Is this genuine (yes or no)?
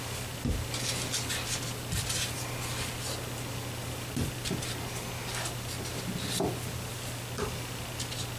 yes